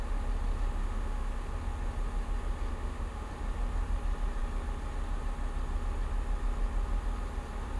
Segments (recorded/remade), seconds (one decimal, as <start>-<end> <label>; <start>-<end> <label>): 0.0-0.8 recorded; 0.8-1.3 remade; 1.3-2.7 recorded; 2.7-3.3 remade; 3.3-7.8 recorded